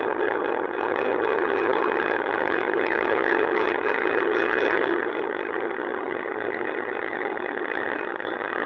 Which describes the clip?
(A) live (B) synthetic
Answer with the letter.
B